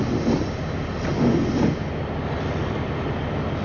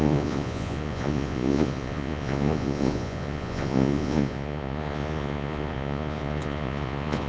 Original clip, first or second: first